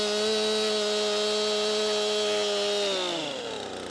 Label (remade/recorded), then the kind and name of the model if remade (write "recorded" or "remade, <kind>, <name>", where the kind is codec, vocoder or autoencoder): recorded